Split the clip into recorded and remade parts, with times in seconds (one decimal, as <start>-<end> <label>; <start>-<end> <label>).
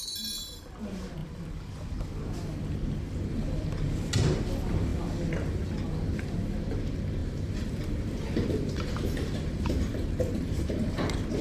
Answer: 0.0-7.2 recorded; 7.2-10.7 remade; 10.7-11.4 recorded